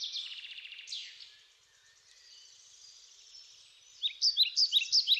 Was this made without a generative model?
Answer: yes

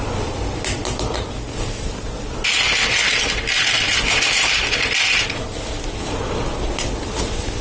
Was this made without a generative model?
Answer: no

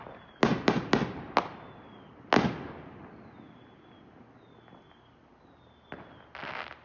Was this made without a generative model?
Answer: yes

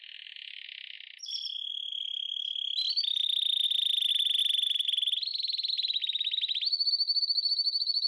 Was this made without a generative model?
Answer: yes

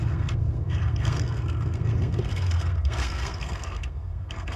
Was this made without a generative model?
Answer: no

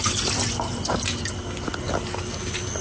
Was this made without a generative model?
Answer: yes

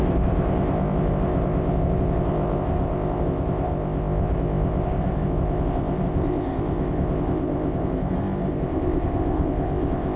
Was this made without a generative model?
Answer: no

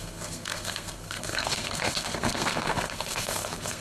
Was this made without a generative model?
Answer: no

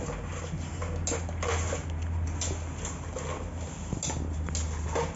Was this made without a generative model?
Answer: yes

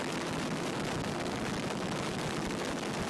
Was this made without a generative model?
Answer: yes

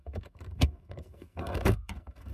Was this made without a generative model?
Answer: no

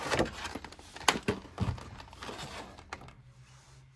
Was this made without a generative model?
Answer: yes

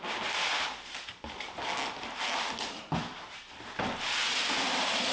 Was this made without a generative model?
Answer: yes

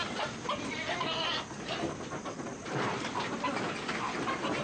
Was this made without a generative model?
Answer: yes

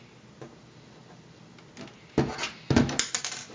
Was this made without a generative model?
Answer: yes